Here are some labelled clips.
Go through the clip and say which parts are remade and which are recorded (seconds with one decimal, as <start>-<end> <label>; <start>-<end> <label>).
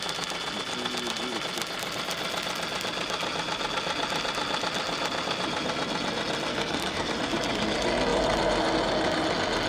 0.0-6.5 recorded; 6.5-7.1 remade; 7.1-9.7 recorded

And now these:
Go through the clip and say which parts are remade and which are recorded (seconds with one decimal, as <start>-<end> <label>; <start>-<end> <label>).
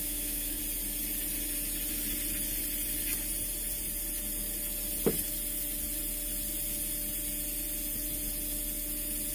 0.0-0.6 remade; 0.6-9.3 recorded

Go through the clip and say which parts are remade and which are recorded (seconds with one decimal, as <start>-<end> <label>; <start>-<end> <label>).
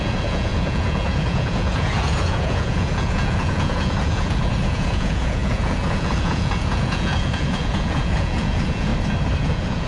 0.0-8.9 remade; 8.9-9.4 recorded; 9.4-9.9 remade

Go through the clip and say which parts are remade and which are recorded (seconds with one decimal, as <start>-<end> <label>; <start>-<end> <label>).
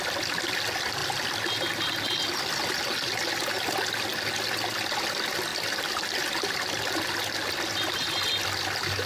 0.0-9.1 recorded